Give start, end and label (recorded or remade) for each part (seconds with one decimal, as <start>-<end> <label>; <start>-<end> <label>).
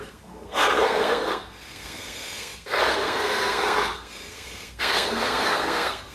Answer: 0.0-6.1 remade